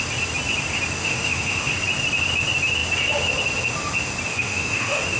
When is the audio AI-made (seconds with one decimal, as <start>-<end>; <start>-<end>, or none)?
1.0-1.7; 4.3-5.2